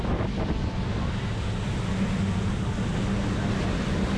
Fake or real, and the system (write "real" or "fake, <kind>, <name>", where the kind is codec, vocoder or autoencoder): real